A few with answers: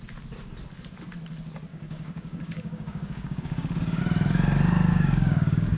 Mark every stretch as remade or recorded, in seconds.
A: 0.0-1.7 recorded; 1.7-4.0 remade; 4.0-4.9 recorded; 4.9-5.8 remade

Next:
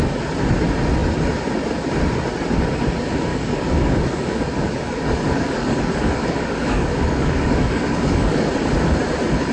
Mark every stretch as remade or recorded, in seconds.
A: 0.0-3.3 recorded; 3.3-8.5 remade; 8.5-9.5 recorded

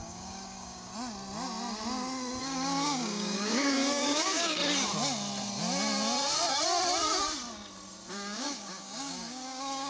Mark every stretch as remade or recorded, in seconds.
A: 0.0-0.9 remade; 0.9-2.4 recorded; 2.4-4.6 remade; 4.6-8.1 recorded; 8.1-9.9 remade